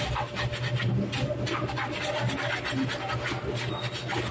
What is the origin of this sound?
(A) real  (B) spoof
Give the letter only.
A